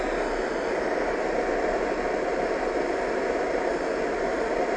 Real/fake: real